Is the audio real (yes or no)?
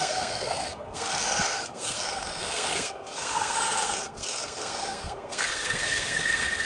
no